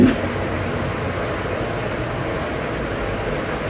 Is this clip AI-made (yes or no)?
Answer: no